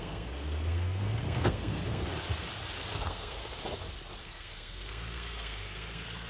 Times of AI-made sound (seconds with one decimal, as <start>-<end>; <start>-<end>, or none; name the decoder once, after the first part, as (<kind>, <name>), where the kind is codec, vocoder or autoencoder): 0.0-2.1 (codec, SNAC); 2.9-3.4; 4.2-6.3